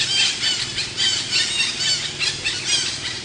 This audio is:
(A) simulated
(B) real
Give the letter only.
B